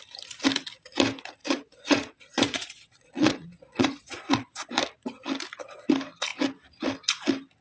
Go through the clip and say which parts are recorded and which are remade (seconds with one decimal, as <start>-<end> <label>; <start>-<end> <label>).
0.0-1.4 recorded; 1.4-4.7 remade; 4.7-7.6 recorded